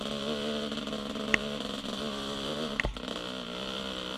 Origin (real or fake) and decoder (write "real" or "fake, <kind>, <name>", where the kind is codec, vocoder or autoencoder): real